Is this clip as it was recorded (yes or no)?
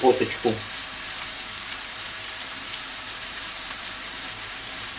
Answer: no